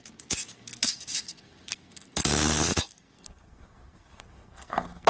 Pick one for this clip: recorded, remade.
remade